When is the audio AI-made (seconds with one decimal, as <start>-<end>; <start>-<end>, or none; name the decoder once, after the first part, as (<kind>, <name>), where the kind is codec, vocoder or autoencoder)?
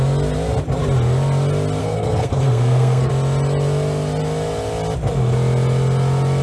1.8-3.1 (codec, SNAC)